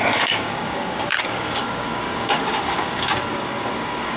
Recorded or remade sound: remade